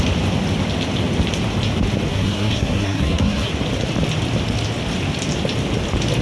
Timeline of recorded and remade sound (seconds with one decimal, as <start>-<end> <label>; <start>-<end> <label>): 0.0-2.1 recorded; 2.1-3.5 remade; 3.5-6.2 recorded

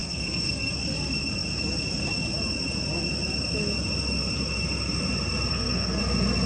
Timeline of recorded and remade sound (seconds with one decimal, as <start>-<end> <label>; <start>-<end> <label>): 0.0-0.7 remade; 0.7-5.5 recorded; 5.5-6.0 remade; 6.0-6.5 recorded

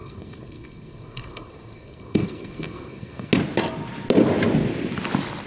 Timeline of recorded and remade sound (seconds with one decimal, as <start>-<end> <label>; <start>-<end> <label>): 0.0-3.3 remade; 3.3-5.5 recorded